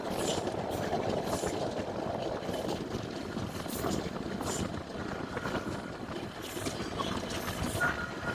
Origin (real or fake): real